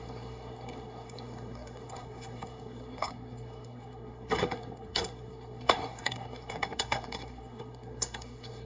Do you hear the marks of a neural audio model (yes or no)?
yes